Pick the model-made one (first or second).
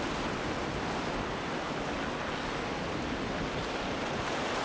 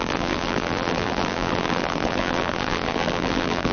second